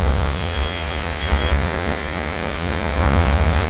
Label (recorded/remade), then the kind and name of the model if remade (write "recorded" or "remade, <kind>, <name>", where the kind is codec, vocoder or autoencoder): remade, vocoder, Vocos